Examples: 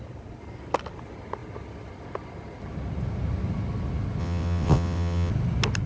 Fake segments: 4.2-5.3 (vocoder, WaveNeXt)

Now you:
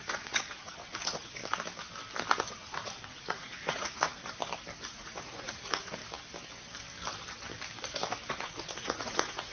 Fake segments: 0.0-1.4 (vocoder, Vocos); 2.5-4.2; 4.9-6.0; 8.3-9.5

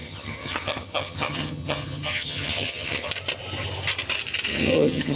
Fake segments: 0.0-3.1 (vocoder, HiFi-GAN); 4.5-5.2

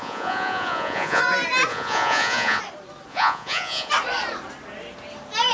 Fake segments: 0.0-1.2 (vocoder, Vocos); 1.7-2.6; 3.1-3.9

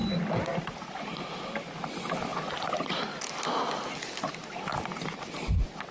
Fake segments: none

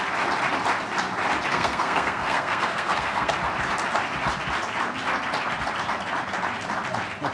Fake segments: 1.5-3.3 (codec, SNAC)

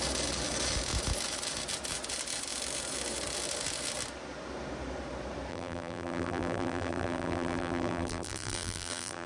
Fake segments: 5.5-9.3 (vocoder, BigVGAN v2)